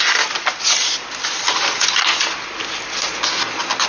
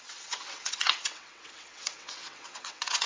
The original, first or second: first